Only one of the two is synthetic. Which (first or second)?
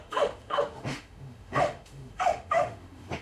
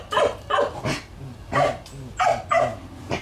first